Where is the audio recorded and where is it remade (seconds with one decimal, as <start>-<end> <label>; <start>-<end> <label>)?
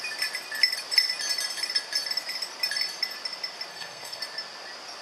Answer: 0.0-3.7 recorded; 3.7-4.2 remade; 4.2-5.0 recorded